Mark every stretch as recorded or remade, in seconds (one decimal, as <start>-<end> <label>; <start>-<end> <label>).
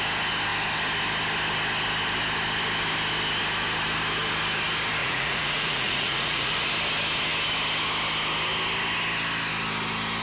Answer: 0.0-5.0 recorded; 5.0-6.7 remade; 6.7-10.2 recorded